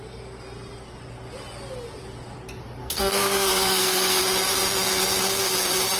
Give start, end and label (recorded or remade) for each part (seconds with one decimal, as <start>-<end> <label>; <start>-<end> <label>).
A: 0.0-2.8 recorded; 2.8-4.2 remade; 4.2-6.0 recorded